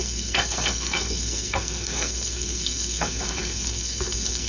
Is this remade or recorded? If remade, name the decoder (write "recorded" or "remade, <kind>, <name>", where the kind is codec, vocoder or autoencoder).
remade, codec, SNAC